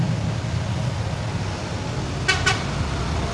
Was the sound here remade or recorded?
recorded